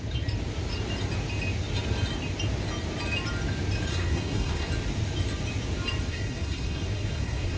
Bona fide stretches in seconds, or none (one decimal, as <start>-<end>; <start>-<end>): 0.0-3.9; 4.7-6.1